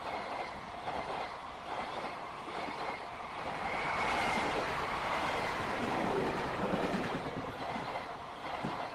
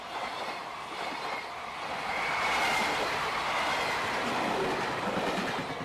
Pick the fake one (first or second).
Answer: first